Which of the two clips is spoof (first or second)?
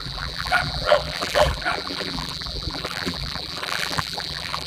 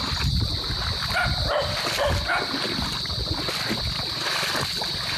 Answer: first